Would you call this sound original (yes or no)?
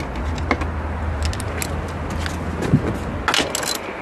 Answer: yes